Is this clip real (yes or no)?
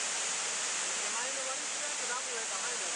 yes